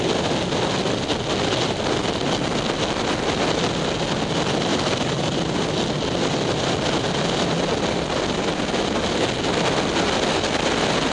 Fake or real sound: real